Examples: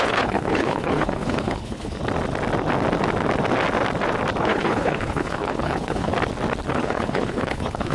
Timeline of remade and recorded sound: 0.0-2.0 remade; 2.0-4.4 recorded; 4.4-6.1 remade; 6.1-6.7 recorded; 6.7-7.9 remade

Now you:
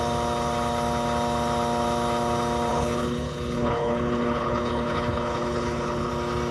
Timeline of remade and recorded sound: 0.0-2.7 recorded; 2.7-6.1 remade; 6.1-6.5 recorded

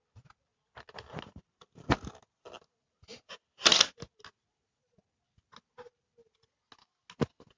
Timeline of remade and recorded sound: 0.0-7.6 recorded

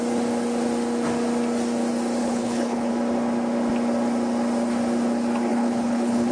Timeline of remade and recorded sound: 0.0-2.2 recorded; 2.2-2.9 remade; 2.9-5.5 recorded; 5.5-6.3 remade

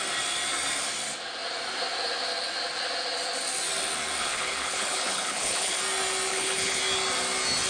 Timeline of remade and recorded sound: 0.0-4.2 recorded; 4.2-5.8 remade; 5.8-6.3 recorded; 6.3-6.8 remade; 6.8-7.7 recorded

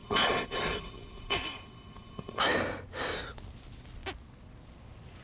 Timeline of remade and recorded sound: 0.0-2.4 remade; 2.4-5.2 recorded

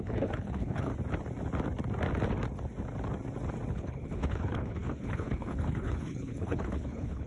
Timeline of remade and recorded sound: 0.0-0.9 remade; 0.9-3.7 recorded; 3.7-7.3 remade